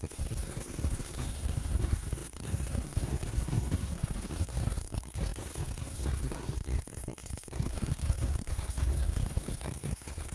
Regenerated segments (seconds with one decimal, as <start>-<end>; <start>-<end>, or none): 0.0-10.3